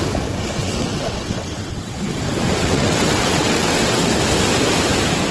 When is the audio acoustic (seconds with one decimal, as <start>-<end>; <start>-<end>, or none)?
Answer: 0.0-0.6; 1.9-2.6; 4.1-5.3